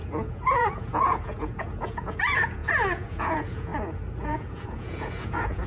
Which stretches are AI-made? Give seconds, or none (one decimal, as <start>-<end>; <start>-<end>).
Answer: 0.0-3.7; 4.2-5.7